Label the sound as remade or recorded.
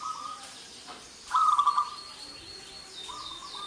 recorded